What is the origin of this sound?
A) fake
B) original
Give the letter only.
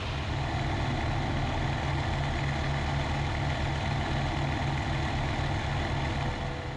B